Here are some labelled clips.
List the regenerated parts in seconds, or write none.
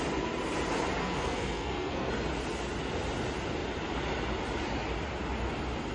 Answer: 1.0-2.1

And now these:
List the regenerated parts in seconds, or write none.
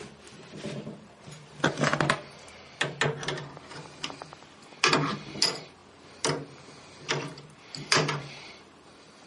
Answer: none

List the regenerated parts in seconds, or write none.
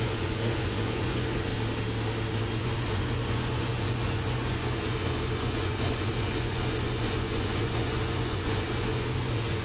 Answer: 0.0-1.5; 2.3-9.6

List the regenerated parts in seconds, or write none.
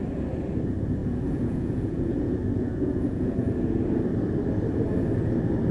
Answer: 1.0-3.5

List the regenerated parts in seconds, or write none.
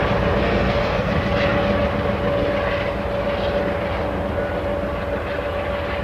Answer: 0.4-1.1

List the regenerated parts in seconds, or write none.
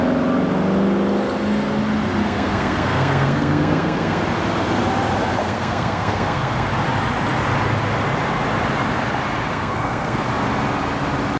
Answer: 2.2-4.2; 5.4-6.7; 9.5-10.2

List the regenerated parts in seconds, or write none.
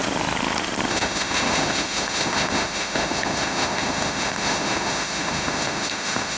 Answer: 0.9-6.4